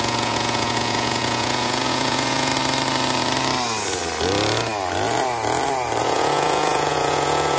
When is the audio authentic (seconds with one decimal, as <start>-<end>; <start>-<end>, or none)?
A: 2.5-6.0